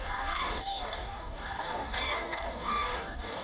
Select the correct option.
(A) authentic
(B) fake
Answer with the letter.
B